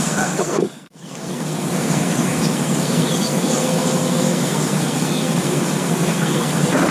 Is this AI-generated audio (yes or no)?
yes